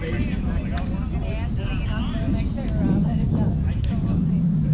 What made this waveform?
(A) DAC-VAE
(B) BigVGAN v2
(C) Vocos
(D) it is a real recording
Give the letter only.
D